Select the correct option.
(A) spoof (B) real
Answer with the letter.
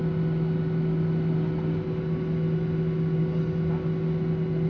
B